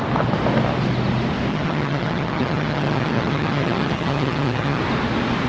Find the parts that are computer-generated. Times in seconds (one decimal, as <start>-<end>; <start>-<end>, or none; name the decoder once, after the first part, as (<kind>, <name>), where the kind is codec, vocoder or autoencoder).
1.5-4.8 (vocoder, HiFi-GAN)